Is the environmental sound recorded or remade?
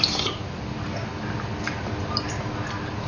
recorded